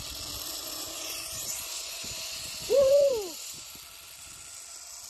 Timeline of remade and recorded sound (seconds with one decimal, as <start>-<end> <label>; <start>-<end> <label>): 0.0-0.6 recorded; 0.6-3.7 remade; 3.7-5.1 recorded